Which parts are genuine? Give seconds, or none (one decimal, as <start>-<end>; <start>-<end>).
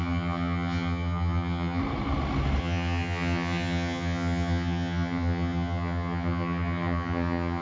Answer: 1.8-2.6